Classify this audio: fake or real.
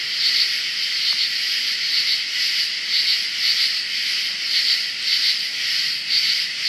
real